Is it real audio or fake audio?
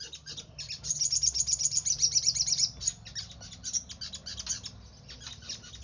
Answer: real